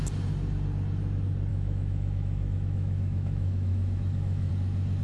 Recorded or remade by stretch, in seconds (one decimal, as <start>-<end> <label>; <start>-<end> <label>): 0.0-1.5 recorded; 1.5-4.5 remade; 4.5-5.0 recorded